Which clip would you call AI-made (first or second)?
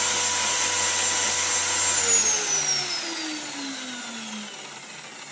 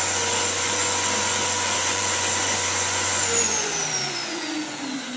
second